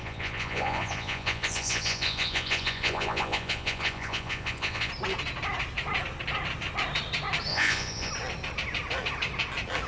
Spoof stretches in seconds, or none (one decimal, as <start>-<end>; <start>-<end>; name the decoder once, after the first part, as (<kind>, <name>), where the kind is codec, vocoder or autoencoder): 0.0-4.9 (vocoder, Vocos); 7.5-8.1